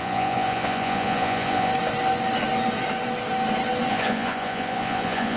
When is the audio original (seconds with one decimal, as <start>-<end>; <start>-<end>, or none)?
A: 1.7-3.9